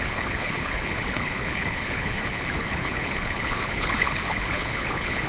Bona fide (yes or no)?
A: no